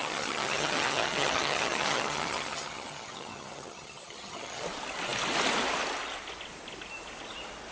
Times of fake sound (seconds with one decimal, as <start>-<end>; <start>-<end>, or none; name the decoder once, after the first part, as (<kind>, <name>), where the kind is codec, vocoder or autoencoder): 0.0-4.6 (vocoder, HiFi-GAN)